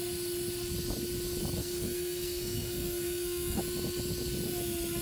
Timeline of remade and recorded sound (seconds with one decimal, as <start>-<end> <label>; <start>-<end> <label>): 0.0-1.6 recorded; 1.6-3.6 remade; 3.6-5.0 recorded